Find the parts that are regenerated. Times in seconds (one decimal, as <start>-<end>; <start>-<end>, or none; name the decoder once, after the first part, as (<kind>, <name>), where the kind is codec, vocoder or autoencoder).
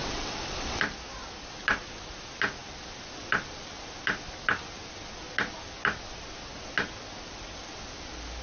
0.0-0.8 (vocoder, WaveNeXt)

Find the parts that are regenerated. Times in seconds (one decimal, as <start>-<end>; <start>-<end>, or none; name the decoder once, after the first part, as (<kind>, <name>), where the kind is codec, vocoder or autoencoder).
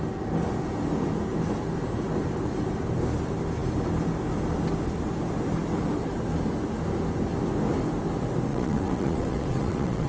8.5-10.1 (vocoder, WaveNeXt)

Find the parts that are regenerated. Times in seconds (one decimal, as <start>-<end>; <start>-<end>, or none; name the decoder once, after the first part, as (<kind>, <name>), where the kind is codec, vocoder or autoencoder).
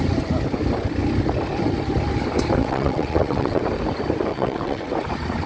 2.6-3.6 (vocoder, WaveNeXt); 4.3-4.9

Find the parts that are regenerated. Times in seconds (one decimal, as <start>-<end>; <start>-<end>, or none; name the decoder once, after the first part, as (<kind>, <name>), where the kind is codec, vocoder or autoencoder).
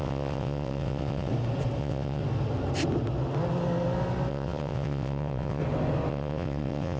0.0-1.3 (vocoder, WaveNeXt); 1.8-2.2; 4.3-5.6; 6.1-7.0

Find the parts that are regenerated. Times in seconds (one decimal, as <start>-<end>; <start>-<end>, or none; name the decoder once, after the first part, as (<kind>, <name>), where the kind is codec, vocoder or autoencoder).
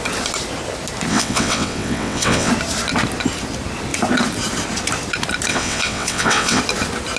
1.1-2.5 (vocoder, WaveNeXt); 5.5-6.6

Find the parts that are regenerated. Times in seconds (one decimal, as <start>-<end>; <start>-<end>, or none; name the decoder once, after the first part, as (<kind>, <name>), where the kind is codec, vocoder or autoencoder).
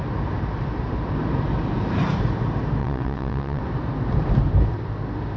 2.8-3.6 (vocoder, WaveNeXt)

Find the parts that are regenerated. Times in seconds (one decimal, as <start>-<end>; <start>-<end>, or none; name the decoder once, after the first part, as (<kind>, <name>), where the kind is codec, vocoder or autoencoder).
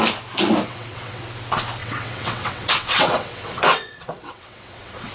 0.7-1.2 (vocoder, WaveNeXt); 1.8-5.1